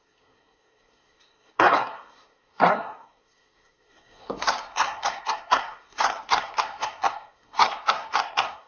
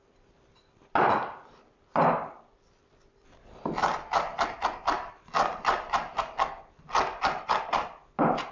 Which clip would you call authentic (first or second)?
second